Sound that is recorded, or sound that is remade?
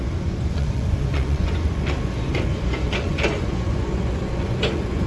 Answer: remade